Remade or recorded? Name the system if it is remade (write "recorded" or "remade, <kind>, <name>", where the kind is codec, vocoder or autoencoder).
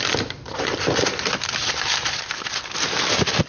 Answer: recorded